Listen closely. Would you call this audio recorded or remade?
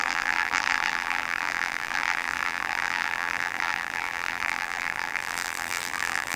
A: remade